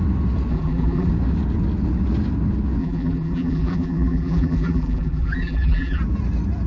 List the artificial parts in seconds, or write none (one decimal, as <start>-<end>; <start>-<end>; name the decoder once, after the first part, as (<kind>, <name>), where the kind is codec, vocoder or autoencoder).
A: 0.5-1.1 (vocoder, BigVGAN v2); 2.8-6.0